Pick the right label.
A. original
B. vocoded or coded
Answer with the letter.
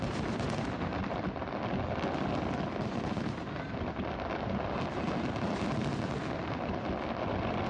A